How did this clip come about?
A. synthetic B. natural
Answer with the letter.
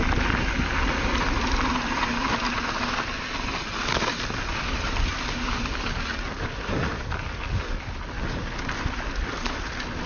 B